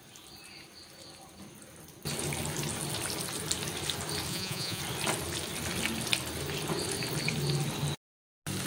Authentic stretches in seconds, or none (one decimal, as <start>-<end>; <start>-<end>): 0.0-4.3; 4.8-8.7